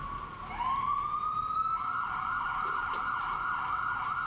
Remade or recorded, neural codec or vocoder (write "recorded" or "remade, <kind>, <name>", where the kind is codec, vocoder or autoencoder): recorded